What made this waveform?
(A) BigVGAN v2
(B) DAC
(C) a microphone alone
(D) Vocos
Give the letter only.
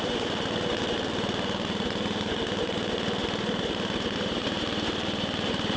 A